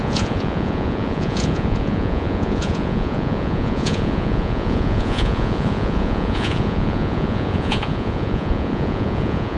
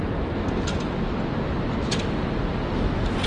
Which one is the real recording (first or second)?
second